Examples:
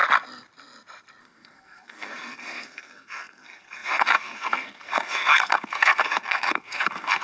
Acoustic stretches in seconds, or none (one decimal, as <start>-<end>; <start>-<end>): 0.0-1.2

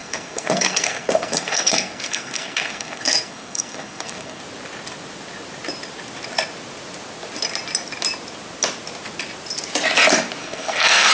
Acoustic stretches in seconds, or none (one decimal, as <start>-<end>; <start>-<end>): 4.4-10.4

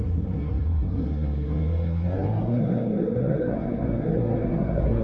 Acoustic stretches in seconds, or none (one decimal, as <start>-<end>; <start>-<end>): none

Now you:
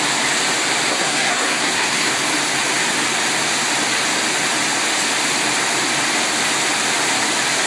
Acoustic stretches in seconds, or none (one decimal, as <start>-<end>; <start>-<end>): 0.0-0.9; 2.1-7.7